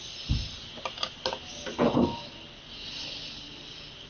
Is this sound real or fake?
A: real